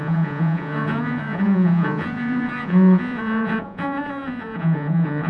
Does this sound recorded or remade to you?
remade